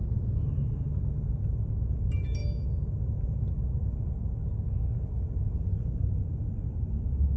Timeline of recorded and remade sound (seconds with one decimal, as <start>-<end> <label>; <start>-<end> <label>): 0.0-7.4 recorded